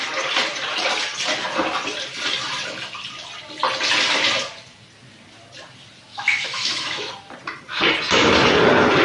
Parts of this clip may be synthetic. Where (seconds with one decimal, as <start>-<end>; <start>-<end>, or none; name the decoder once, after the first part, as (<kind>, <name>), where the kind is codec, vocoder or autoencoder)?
6.1-7.1 (autoencoder, DAC-VAE)